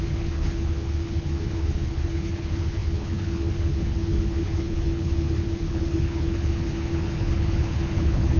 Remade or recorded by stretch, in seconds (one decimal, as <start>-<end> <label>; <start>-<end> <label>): 0.0-8.4 remade